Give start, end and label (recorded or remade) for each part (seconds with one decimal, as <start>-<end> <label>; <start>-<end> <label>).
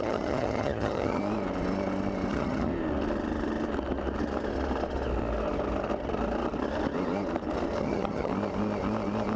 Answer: 0.0-1.2 remade; 1.2-2.3 recorded; 2.3-2.7 remade; 2.7-7.8 recorded; 7.8-8.3 remade; 8.3-9.4 recorded